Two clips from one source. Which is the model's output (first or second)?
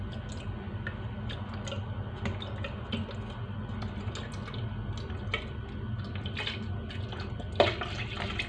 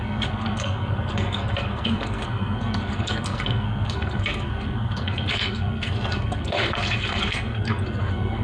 second